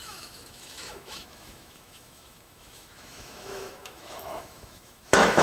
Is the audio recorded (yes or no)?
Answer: no